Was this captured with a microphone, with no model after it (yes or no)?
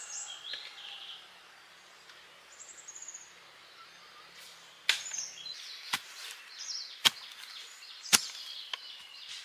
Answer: yes